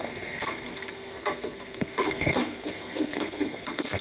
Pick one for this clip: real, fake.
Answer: fake